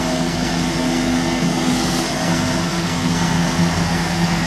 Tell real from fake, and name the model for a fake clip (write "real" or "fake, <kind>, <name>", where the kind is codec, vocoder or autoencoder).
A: fake, codec, SNAC